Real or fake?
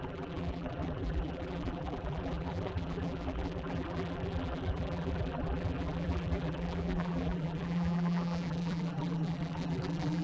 fake